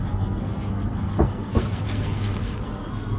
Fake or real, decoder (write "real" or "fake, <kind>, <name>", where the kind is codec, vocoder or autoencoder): fake, codec, SNAC